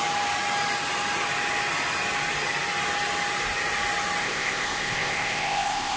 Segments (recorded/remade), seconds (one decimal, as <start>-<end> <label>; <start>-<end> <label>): 0.0-4.2 recorded; 4.2-6.0 remade